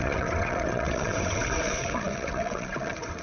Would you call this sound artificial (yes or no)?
yes